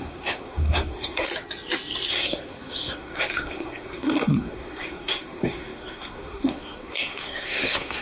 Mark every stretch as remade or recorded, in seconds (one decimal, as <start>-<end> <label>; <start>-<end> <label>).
0.0-1.3 remade; 1.3-2.1 recorded; 2.1-8.0 remade